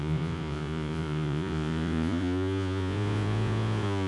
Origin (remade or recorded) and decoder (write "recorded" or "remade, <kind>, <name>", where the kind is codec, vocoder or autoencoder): remade, vocoder, Vocos